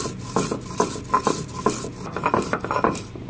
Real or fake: real